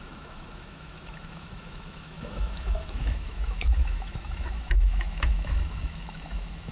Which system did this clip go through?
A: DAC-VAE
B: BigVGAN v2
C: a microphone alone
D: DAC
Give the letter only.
A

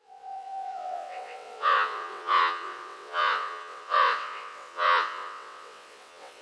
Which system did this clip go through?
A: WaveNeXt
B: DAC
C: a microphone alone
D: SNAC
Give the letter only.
A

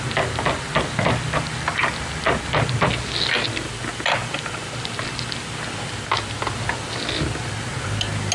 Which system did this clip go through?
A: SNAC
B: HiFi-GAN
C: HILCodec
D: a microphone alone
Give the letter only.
D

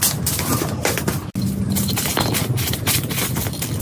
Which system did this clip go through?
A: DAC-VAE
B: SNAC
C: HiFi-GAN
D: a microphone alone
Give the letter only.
D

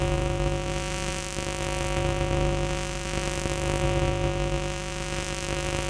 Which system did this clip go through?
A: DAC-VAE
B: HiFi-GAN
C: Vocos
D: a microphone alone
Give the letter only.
D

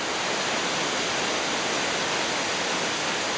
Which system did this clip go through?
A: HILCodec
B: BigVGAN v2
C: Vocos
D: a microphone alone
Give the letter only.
D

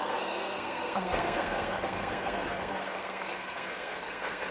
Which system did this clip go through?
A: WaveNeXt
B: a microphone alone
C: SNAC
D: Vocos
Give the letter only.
C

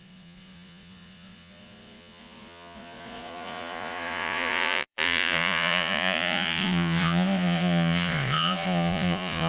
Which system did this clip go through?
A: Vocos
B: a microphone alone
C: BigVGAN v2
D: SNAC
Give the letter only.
A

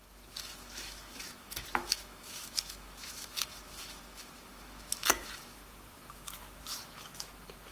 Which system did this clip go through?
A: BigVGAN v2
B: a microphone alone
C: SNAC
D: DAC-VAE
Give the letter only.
D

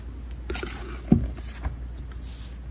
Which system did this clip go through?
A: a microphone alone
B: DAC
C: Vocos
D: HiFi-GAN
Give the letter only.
A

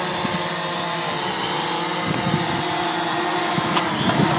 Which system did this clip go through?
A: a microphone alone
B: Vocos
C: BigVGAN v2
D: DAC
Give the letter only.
A